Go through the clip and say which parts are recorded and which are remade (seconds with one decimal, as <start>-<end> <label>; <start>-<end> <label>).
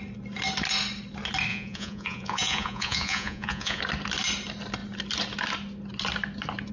0.0-1.5 recorded; 1.5-3.8 remade; 3.8-6.7 recorded